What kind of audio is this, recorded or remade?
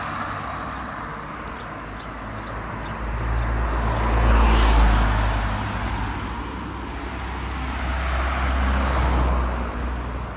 recorded